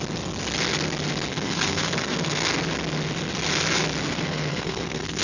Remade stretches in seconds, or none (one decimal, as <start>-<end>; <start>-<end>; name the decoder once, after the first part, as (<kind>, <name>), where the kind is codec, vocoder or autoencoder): 1.3-2.5 (codec, SNAC); 4.0-5.2